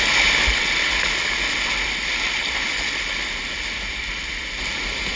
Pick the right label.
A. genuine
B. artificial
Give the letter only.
A